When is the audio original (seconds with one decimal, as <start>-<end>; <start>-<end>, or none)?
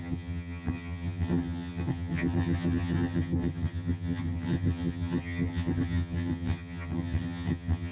none